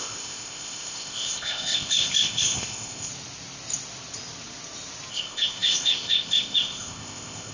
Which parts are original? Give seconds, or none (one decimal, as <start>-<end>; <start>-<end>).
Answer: 3.1-5.1